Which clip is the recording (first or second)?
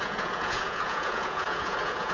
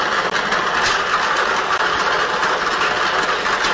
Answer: second